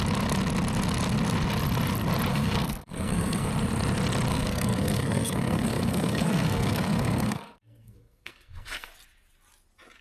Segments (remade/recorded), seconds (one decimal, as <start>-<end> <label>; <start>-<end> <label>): 0.0-2.3 recorded; 2.3-3.5 remade; 3.5-4.3 recorded; 4.3-8.9 remade; 8.9-10.0 recorded